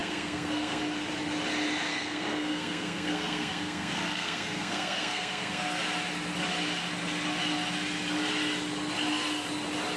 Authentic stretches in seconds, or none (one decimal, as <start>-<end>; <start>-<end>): 0.8-1.9; 5.8-10.0